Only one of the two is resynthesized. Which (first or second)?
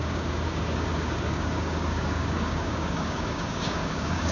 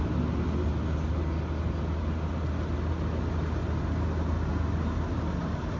first